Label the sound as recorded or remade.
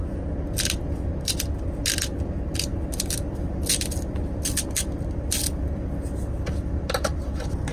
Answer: recorded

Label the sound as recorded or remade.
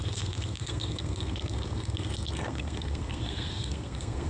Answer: remade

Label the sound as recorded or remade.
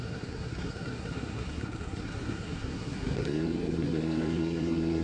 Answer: remade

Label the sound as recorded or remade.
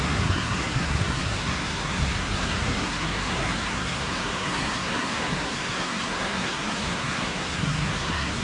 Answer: remade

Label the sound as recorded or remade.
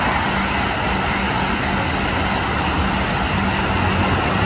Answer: recorded